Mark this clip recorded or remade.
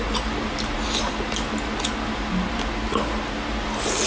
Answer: recorded